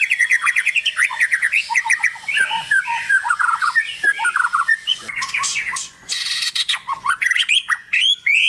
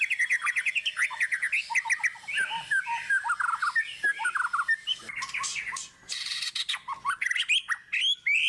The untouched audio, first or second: second